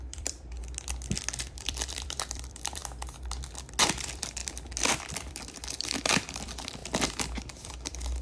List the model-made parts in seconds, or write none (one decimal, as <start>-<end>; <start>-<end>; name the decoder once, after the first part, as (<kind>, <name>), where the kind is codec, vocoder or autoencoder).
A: 0.0-0.6 (vocoder, BigVGAN v2); 1.4-2.8; 4.0-4.4; 5.0-6.8; 7.5-8.2

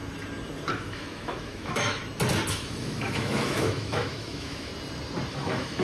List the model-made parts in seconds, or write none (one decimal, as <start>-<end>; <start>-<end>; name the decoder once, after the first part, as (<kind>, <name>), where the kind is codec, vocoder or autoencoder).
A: 0.7-2.0 (autoencoder, DAC-VAE); 2.5-4.7; 5.3-5.8